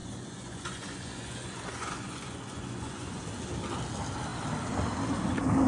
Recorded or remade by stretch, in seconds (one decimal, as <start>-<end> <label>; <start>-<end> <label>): 0.0-3.2 remade; 3.2-5.7 recorded